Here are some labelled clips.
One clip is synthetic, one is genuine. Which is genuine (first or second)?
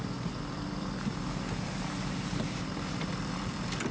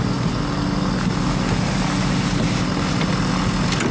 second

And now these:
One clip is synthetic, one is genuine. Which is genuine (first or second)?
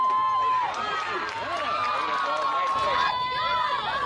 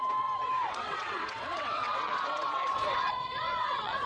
first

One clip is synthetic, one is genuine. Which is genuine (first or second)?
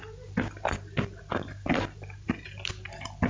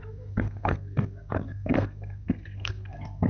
first